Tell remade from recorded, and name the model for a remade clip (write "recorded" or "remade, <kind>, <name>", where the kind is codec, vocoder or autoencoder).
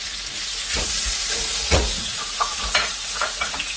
remade, vocoder, Vocos